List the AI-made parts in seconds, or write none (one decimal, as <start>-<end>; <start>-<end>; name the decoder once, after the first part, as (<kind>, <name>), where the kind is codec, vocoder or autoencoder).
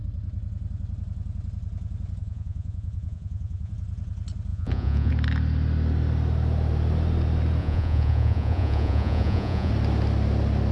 2.2-3.7 (vocoder, Vocos); 4.5-5.1; 7.6-9.7